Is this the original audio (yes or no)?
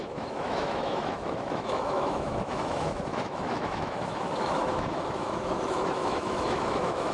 no